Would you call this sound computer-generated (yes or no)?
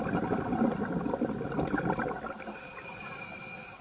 no